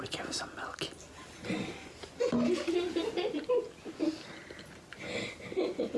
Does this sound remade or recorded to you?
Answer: recorded